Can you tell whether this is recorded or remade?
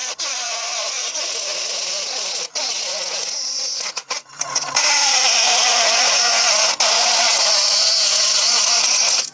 remade